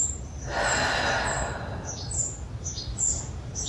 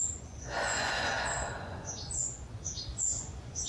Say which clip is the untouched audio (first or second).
first